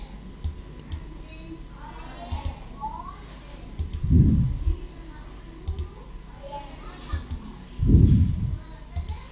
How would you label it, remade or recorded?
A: recorded